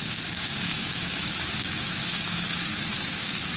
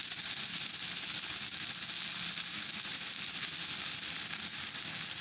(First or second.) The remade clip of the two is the first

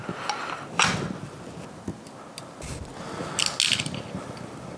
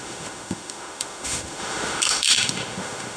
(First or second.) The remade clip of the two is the second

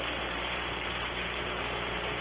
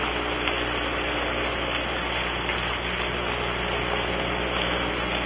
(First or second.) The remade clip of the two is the first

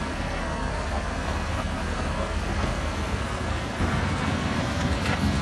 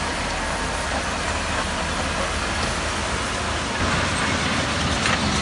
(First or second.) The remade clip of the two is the first